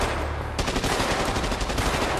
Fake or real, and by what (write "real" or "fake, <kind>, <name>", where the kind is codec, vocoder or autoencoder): real